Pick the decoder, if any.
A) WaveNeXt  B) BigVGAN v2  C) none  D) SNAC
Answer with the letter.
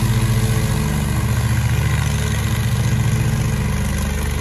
C